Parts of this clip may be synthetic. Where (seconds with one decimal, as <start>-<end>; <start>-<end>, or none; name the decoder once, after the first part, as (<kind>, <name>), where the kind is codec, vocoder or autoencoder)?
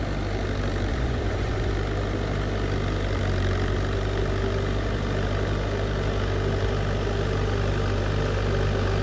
0.9-1.7 (vocoder, Vocos)